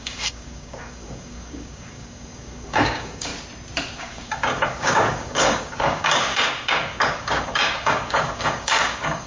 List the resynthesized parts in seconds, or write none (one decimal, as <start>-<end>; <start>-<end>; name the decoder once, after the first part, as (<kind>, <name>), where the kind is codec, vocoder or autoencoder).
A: 0.0-3.3 (codec, DAC); 4.0-9.3